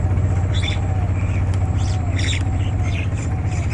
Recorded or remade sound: remade